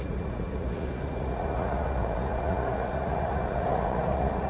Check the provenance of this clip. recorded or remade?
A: remade